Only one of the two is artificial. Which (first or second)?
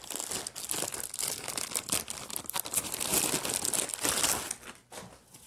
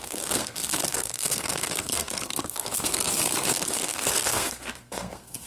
second